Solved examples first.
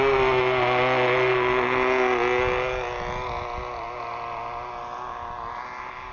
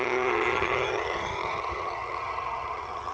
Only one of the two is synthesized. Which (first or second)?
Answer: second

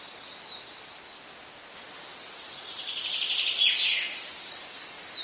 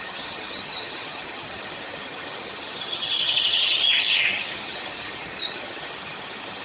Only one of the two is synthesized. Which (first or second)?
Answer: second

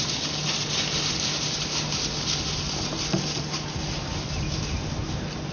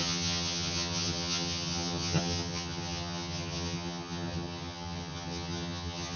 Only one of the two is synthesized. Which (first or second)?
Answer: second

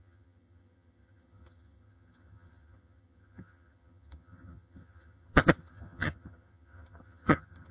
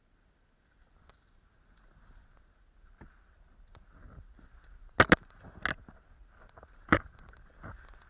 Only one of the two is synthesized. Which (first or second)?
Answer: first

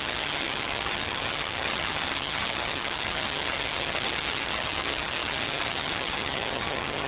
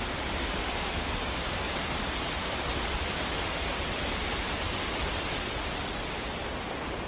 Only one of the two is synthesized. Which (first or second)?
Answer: first